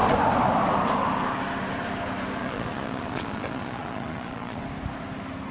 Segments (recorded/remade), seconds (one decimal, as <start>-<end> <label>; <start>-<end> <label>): 0.0-2.4 recorded; 2.4-4.6 remade; 4.6-5.5 recorded